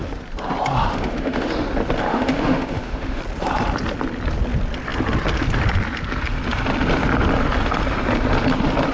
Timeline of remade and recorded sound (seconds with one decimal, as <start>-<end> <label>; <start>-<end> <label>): 0.0-0.9 recorded; 0.9-1.5 remade; 1.5-2.1 recorded; 2.1-3.2 remade; 3.2-8.9 recorded